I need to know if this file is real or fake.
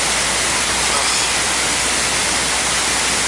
real